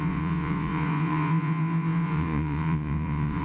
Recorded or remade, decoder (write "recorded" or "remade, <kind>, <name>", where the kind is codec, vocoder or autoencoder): remade, vocoder, Vocos